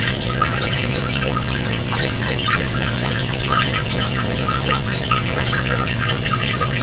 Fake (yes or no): yes